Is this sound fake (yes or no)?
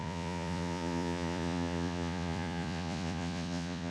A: yes